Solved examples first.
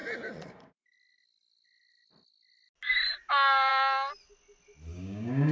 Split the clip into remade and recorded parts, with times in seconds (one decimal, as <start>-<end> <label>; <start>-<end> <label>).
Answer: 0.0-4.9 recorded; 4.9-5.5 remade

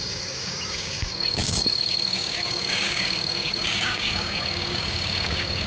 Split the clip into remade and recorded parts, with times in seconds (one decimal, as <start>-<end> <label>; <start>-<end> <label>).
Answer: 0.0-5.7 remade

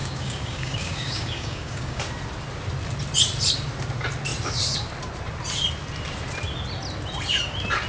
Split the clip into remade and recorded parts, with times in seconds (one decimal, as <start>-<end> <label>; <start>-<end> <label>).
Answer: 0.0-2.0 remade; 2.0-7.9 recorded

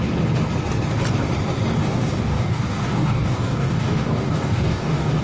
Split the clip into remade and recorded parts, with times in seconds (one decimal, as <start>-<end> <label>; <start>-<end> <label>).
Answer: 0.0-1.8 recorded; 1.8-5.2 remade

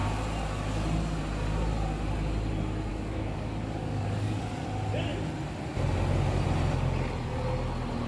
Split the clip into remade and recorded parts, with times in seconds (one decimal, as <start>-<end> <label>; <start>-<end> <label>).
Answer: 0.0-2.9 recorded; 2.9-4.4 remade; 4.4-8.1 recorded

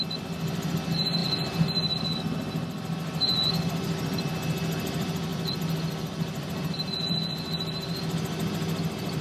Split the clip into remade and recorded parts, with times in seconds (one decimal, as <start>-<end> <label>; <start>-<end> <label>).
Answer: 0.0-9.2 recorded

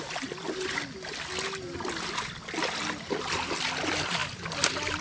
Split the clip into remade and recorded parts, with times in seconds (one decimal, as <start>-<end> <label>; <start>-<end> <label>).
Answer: 0.0-5.0 recorded